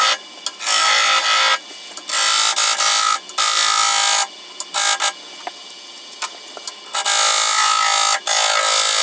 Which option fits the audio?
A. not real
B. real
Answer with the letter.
B